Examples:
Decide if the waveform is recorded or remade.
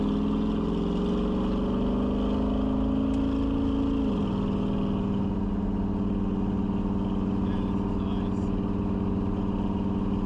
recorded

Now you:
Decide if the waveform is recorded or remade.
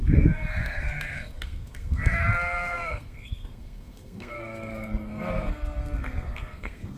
remade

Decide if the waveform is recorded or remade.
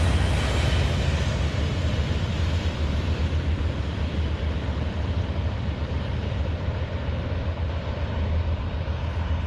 recorded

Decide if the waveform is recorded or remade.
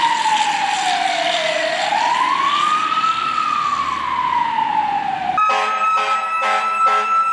recorded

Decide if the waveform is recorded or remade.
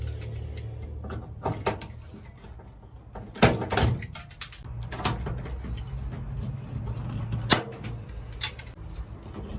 recorded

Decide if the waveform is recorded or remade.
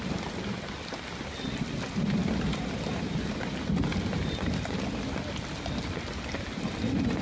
recorded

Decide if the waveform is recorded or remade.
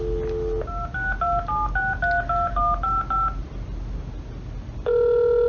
recorded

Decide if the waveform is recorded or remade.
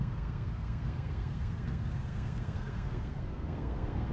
remade